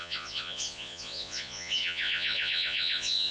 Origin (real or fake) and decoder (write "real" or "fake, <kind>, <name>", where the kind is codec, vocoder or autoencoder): fake, vocoder, Vocos